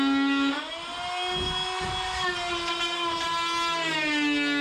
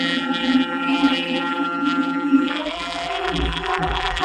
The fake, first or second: second